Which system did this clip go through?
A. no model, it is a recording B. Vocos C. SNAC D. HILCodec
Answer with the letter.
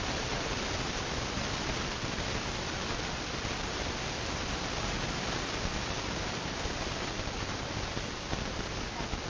A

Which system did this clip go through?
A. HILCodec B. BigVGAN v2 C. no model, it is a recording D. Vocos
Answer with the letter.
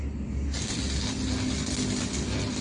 C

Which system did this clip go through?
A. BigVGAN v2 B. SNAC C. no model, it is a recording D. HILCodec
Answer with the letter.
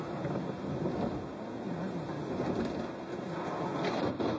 C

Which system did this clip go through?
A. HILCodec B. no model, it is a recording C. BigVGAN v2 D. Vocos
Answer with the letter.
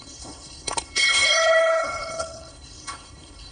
A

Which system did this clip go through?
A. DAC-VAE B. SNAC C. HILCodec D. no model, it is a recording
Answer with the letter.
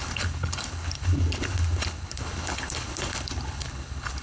C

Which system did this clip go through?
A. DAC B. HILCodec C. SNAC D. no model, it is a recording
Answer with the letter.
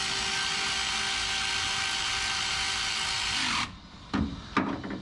D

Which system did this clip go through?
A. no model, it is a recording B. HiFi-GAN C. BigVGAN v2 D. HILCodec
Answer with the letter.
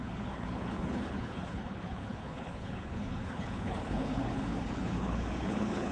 D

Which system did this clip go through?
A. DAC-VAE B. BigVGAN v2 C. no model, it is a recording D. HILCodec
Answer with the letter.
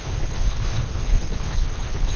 D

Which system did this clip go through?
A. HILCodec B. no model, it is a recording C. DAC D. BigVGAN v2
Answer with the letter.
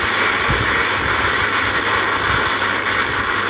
B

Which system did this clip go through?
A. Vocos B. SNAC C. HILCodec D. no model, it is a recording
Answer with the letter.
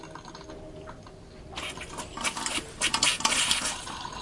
D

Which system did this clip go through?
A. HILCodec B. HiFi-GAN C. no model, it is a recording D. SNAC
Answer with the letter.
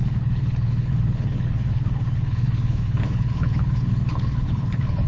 A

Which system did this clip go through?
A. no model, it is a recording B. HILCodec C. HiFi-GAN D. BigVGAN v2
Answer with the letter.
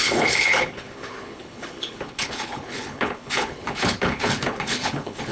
B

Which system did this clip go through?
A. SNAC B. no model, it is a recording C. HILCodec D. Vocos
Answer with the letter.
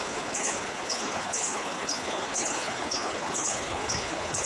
C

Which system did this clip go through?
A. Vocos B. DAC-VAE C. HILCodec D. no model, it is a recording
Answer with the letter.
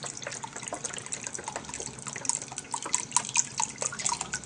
D